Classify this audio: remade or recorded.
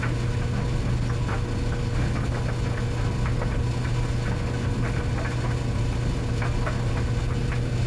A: recorded